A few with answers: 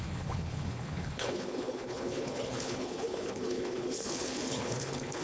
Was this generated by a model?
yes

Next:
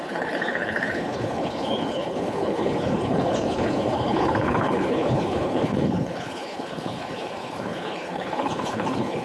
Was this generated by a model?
yes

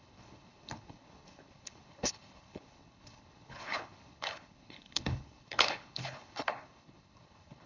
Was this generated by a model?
yes